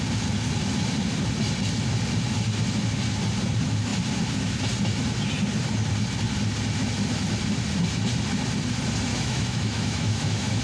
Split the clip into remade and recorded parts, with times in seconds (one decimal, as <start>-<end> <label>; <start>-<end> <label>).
0.0-9.1 recorded; 9.1-10.6 remade